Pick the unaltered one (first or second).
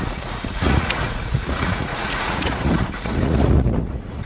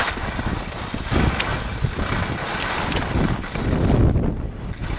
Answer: second